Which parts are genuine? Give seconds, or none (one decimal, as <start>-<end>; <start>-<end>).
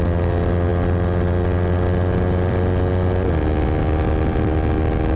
0.0-0.7; 2.9-5.2